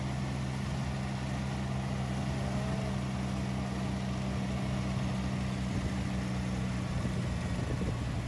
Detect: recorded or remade recorded